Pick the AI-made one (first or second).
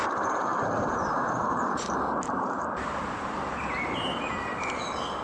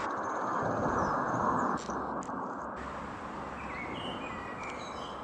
first